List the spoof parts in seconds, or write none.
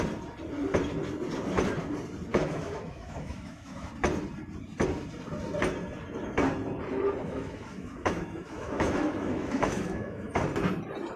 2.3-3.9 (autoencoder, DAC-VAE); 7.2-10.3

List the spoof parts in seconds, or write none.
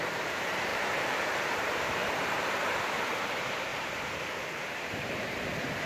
0.0-5.9 (vocoder, BigVGAN v2)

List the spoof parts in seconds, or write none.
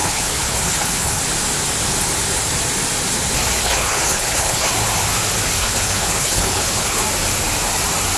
0.0-1.2 (codec, HILCodec); 3.6-4.7; 5.6-7.0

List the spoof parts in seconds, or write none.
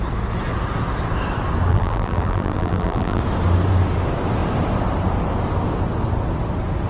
1.7-3.2 (vocoder, BigVGAN v2)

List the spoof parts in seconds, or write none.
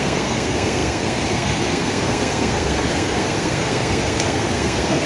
0.0-5.1 (codec, SNAC)